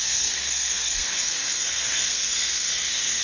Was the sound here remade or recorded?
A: remade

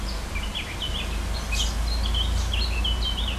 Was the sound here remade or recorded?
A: recorded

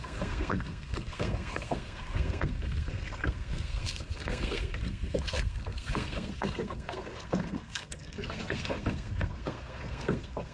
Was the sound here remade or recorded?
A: remade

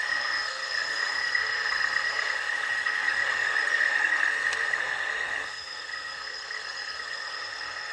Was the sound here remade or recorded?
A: remade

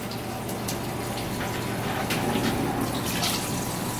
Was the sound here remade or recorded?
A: recorded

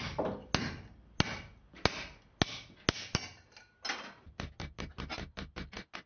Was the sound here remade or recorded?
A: recorded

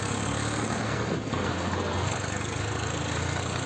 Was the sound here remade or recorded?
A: remade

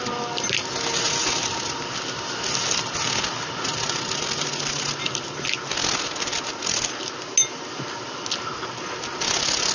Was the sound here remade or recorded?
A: recorded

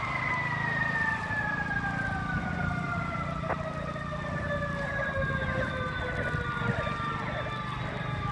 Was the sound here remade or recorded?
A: recorded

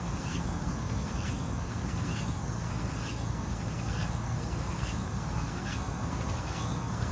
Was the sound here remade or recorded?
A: remade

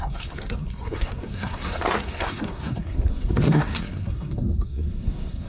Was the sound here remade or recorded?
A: remade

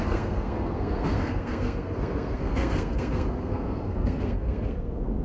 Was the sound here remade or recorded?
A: remade